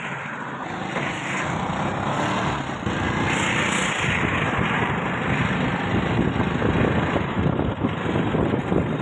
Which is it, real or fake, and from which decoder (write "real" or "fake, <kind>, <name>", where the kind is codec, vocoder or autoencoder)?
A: real